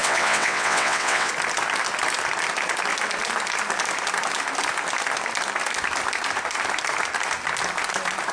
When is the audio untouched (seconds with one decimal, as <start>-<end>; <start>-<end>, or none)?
1.3-8.3